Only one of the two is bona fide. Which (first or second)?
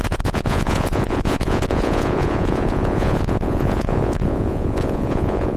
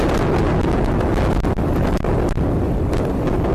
second